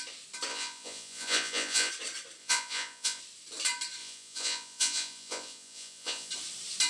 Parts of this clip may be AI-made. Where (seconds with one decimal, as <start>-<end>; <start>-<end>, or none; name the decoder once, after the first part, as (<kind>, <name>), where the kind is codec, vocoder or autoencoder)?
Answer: 0.5-1.9 (vocoder, Vocos); 2.4-3.2; 4.0-6.3